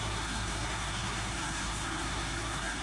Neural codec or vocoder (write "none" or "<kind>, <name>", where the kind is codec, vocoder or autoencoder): codec, SNAC